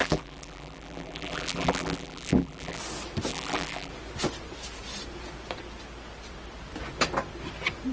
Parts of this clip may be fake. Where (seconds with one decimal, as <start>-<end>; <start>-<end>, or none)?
0.0-2.8; 3.3-3.9